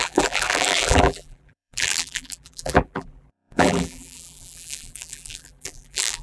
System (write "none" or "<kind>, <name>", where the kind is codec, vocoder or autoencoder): vocoder, BigVGAN v2